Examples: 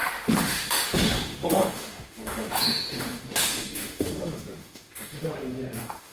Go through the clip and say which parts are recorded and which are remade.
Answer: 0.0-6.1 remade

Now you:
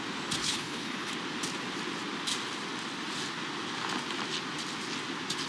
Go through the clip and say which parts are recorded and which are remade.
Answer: 0.0-0.4 recorded; 0.4-1.1 remade; 1.1-5.5 recorded

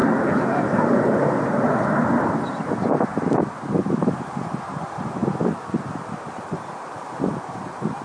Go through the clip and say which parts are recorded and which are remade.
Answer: 0.0-8.0 recorded

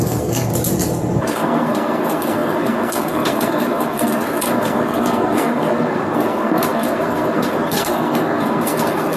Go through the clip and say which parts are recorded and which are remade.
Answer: 0.0-0.5 remade; 0.5-1.2 recorded; 1.2-9.2 remade

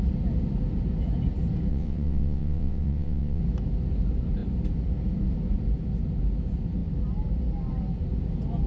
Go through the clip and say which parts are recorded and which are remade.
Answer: 0.0-1.7 recorded; 1.7-3.4 remade; 3.4-8.7 recorded

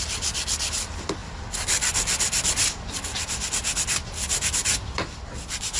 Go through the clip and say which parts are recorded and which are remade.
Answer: 0.0-1.2 recorded; 1.2-2.9 remade; 2.9-5.8 recorded

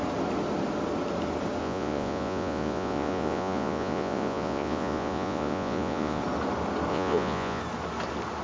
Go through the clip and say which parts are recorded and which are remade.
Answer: 0.0-1.6 recorded; 1.6-6.2 remade; 6.2-6.9 recorded; 6.9-7.6 remade; 7.6-8.4 recorded